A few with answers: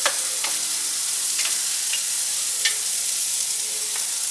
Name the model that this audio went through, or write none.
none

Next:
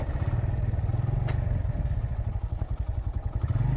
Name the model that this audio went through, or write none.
none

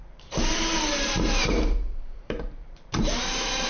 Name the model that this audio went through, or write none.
vocoder, BigVGAN v2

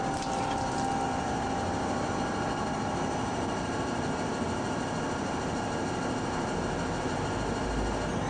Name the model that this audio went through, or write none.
none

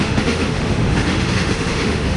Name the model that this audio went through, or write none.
autoencoder, DAC-VAE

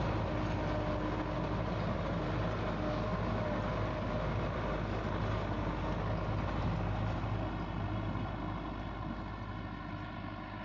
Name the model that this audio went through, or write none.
none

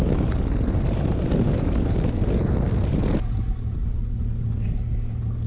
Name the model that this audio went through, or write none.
none